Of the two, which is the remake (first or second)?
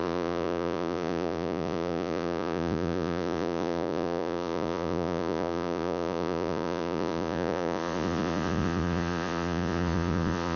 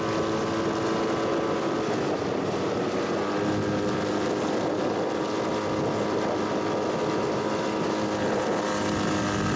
first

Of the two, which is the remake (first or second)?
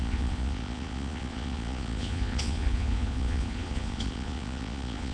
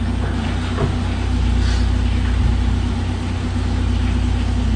first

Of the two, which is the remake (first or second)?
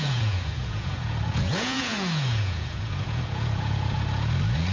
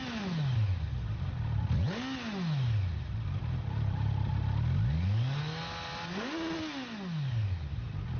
first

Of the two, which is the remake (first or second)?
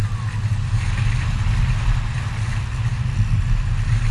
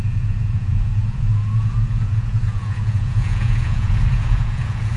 second